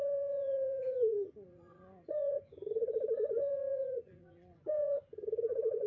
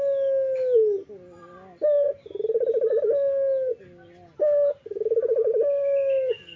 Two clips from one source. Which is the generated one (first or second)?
first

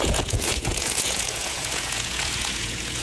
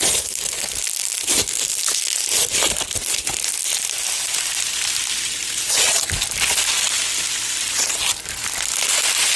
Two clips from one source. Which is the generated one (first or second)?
first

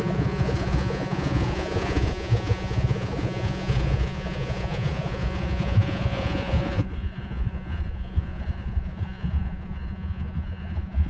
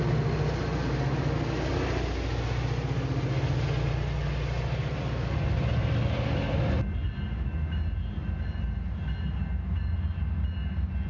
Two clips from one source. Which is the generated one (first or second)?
first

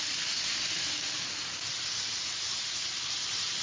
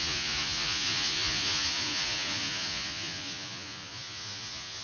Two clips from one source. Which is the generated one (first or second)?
second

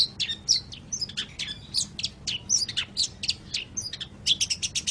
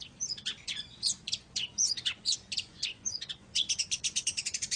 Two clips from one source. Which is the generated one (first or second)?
second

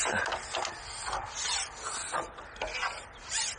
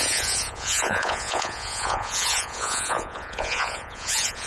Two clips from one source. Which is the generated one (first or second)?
second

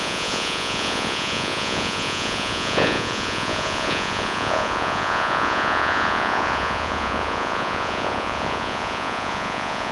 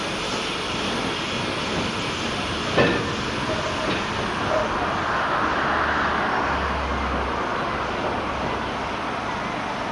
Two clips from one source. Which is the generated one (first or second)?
first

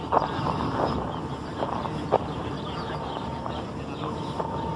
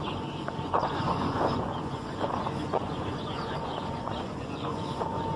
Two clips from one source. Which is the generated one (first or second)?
second